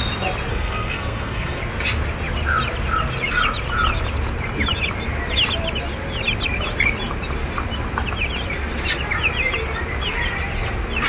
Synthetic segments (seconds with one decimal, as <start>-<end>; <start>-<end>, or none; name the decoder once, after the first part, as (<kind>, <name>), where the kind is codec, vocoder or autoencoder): 0.5-1.6 (codec, SNAC)

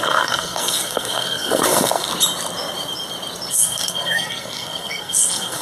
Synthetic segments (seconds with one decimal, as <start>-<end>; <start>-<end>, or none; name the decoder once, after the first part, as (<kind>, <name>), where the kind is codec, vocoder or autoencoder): 0.0-2.1 (codec, SNAC); 3.5-5.6

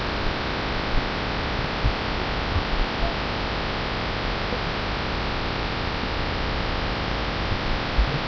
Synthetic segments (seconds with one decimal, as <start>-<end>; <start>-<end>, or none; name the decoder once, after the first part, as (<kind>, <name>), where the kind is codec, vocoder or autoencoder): none

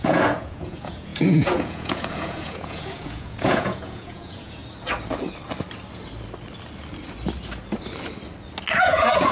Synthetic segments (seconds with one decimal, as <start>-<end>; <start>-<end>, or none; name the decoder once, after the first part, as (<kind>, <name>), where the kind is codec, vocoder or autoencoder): 0.0-4.6 (vocoder, Vocos); 8.8-9.3